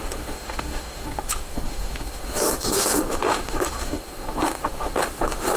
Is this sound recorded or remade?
remade